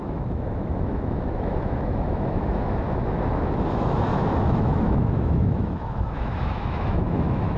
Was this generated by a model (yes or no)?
yes